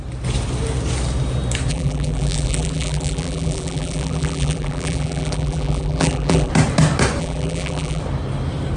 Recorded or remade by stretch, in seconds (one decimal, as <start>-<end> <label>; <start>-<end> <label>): 0.0-1.7 recorded; 1.7-6.5 remade; 6.5-7.2 recorded; 7.2-8.0 remade; 8.0-8.8 recorded